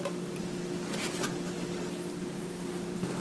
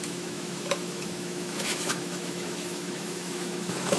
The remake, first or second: second